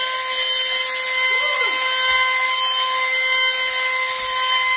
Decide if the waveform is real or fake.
real